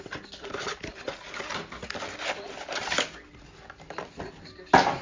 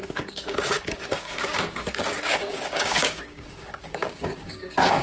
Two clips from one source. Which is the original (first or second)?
first